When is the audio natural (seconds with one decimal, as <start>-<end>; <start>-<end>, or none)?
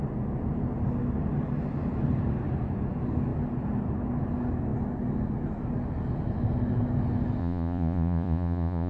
0.0-7.4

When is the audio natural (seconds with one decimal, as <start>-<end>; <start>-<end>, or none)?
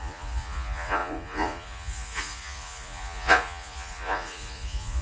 none